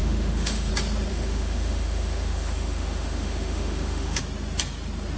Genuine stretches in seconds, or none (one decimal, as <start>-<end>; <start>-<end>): 0.7-1.1; 4.2-5.2

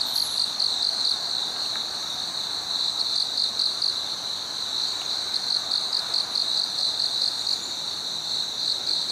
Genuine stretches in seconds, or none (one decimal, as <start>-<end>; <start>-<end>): 0.0-9.1

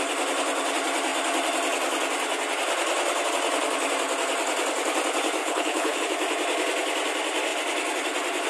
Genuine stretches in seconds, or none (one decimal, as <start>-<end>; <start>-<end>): 0.0-5.4; 6.0-8.5

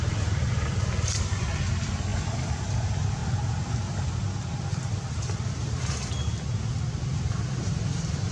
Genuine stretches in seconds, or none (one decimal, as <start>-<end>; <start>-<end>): 2.1-2.7; 3.2-4.6; 5.6-6.7

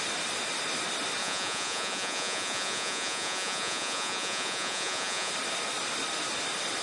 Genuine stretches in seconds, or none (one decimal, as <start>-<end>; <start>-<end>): 0.0-1.2; 5.3-6.8

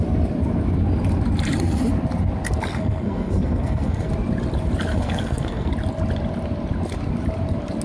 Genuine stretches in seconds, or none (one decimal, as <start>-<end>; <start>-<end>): 0.0-2.7; 4.1-4.9; 5.7-7.8

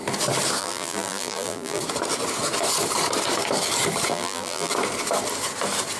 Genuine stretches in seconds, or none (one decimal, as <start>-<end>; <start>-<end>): 0.0-0.6; 1.8-4.1; 4.7-6.0